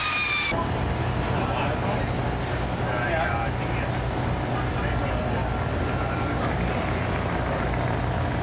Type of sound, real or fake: real